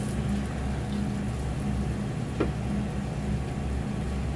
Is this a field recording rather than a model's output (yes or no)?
yes